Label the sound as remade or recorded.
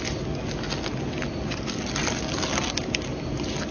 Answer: recorded